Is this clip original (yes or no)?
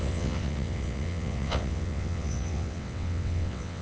no